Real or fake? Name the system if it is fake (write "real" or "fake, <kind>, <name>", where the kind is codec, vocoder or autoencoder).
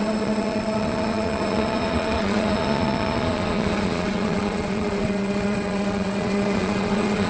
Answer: fake, vocoder, Vocos